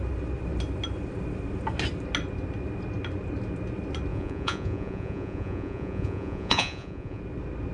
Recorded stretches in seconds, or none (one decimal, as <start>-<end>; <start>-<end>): 0.0-4.1; 7.2-7.7